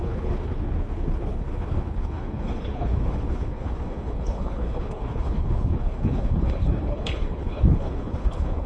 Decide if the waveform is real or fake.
fake